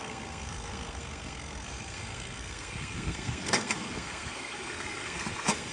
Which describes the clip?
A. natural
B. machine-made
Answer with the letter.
B